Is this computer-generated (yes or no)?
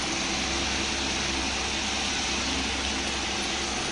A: no